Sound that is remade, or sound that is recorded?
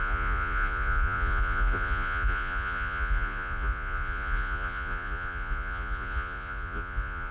remade